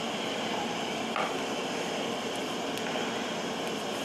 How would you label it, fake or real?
real